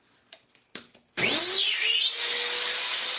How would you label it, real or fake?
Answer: real